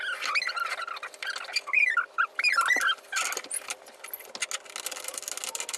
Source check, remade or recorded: recorded